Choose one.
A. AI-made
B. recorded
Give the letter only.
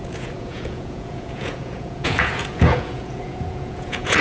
A